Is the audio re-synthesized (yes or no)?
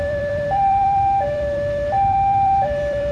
yes